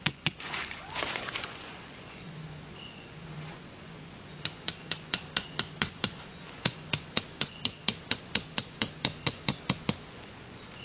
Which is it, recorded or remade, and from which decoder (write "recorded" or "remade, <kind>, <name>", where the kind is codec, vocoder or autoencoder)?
remade, vocoder, Vocos